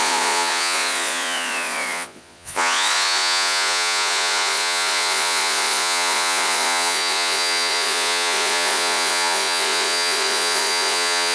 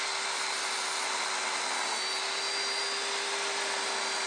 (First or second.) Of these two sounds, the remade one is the first